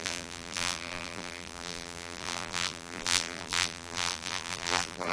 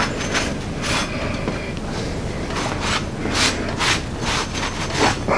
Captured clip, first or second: second